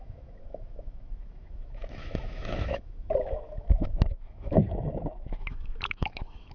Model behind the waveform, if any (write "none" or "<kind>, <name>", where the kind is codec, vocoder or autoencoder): autoencoder, DAC-VAE